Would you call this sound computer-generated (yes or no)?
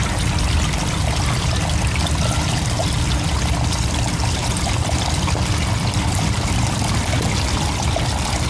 no